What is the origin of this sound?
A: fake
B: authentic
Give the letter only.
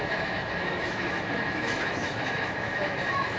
A